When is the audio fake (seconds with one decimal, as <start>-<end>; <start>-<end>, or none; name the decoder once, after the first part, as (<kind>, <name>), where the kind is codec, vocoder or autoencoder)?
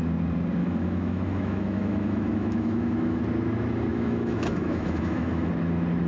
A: 0.6-3.2 (autoencoder, DAC-VAE); 3.9-5.5